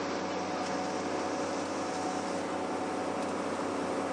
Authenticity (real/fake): real